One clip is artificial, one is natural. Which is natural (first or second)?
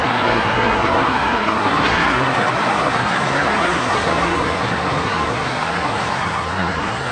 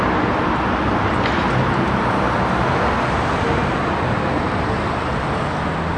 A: second